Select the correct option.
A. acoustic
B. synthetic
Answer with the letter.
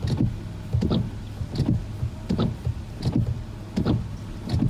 A